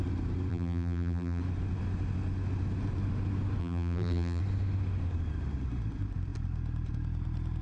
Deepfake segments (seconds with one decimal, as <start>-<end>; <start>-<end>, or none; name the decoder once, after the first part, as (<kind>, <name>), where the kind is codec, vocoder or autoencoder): 0.5-1.4 (vocoder, BigVGAN v2); 3.6-4.4